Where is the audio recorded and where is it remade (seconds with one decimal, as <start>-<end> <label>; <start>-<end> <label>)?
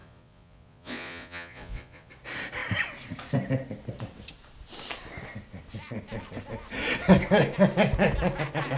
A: 0.0-2.1 remade; 2.1-8.8 recorded